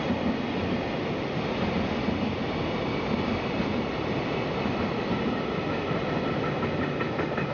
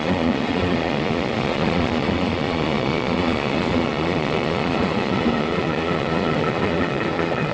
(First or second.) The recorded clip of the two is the first